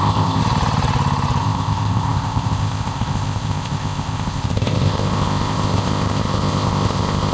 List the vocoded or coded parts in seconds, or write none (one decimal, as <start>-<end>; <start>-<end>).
0.0-0.4; 1.4-7.3